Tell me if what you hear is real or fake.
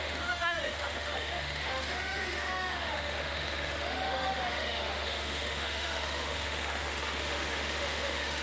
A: fake